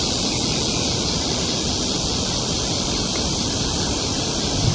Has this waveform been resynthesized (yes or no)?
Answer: no